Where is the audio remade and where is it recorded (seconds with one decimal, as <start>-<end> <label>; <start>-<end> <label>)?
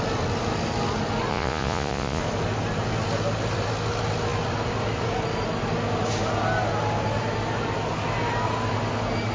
0.0-1.3 recorded; 1.3-2.2 remade; 2.2-9.3 recorded